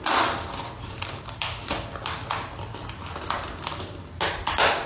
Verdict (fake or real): real